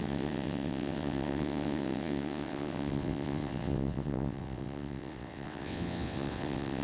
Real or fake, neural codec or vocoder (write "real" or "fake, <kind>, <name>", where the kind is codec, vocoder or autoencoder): fake, vocoder, WaveNeXt